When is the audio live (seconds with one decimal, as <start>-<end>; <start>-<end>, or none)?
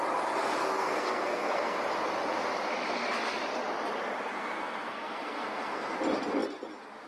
0.0-0.6; 1.8-4.3; 5.9-7.1